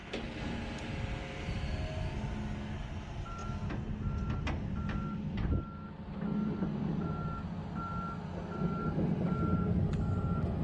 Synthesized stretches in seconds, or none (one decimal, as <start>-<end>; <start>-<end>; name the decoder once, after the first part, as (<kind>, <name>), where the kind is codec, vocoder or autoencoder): none

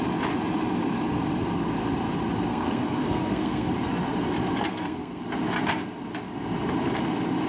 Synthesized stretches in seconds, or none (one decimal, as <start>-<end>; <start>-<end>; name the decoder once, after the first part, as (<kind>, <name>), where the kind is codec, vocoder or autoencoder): 2.5-3.7 (codec, SNAC); 4.7-5.2

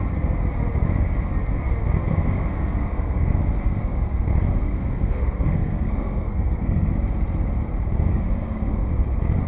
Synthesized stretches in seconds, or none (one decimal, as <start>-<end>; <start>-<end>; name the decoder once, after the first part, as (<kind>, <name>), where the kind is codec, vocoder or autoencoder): 2.1-3.4 (codec, SNAC); 4.6-6.9; 8.1-8.9

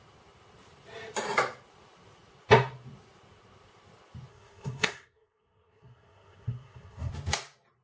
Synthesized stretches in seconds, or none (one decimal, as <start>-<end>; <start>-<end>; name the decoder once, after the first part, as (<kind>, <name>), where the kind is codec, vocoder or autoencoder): 4.3-7.1 (codec, SNAC)

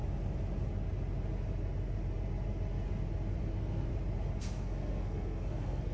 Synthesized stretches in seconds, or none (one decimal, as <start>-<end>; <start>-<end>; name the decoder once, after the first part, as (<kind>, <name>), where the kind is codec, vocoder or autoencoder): 3.5-3.9 (codec, SNAC); 4.4-5.9

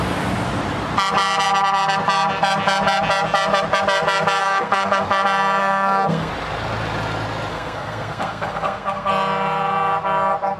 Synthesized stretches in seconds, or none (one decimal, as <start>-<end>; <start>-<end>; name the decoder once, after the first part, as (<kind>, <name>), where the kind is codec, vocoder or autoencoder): 4.4-5.0 (codec, SNAC); 5.6-6.3; 7.5-9.1